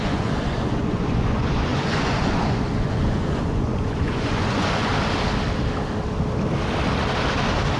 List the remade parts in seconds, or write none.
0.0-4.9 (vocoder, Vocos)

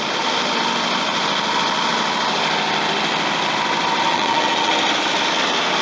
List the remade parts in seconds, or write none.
4.1-4.7 (vocoder, Vocos)